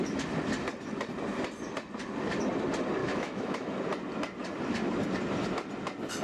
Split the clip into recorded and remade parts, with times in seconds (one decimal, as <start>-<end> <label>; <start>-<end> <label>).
0.0-3.0 recorded; 3.0-3.7 remade; 3.7-6.2 recorded